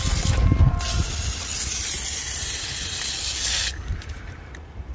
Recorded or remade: recorded